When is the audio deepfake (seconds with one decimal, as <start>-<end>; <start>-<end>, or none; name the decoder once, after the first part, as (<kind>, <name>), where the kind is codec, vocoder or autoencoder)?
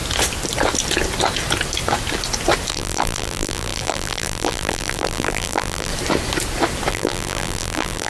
2.7-5.9 (vocoder, BigVGAN v2); 6.9-8.1